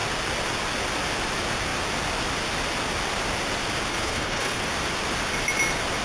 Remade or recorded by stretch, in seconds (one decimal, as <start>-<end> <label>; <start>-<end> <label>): 0.0-3.9 recorded; 3.9-4.7 remade; 4.7-6.0 recorded